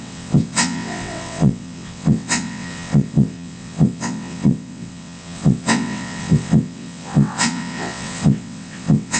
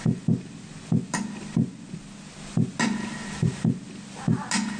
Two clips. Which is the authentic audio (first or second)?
second